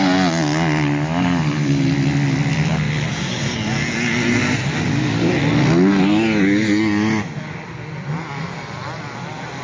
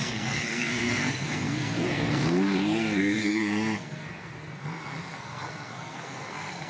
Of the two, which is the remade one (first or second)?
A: second